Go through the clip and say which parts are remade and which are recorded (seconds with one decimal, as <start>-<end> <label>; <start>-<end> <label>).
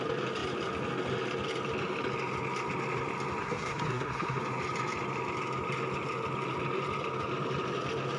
0.0-3.4 recorded; 3.4-4.4 remade; 4.4-8.2 recorded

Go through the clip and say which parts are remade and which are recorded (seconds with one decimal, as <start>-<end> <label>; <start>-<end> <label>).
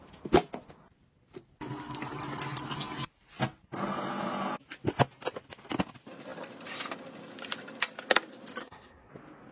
0.0-8.6 recorded; 8.6-9.1 remade; 9.1-9.5 recorded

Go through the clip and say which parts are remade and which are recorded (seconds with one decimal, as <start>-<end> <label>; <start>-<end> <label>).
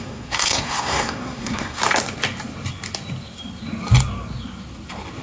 0.0-1.8 remade; 1.8-5.2 recorded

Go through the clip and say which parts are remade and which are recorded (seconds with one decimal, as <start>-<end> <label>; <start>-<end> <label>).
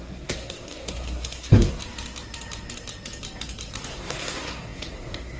0.0-1.8 remade; 1.8-3.9 recorded; 3.9-5.4 remade